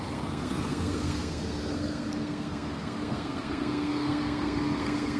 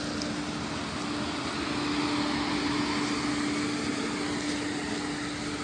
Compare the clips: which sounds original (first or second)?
second